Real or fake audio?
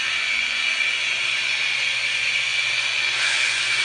fake